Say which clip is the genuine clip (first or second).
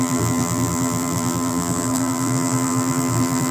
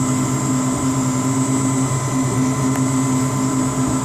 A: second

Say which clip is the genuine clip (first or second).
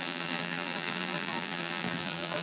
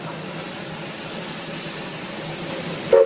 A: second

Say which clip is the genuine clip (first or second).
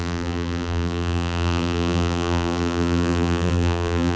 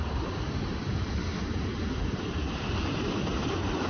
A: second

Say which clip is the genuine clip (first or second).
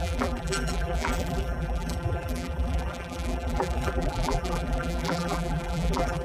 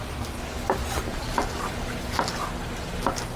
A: second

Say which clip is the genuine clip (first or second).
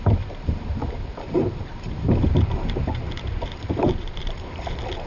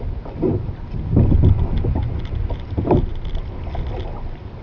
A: second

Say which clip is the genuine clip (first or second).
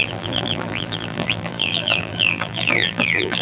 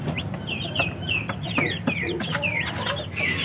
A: second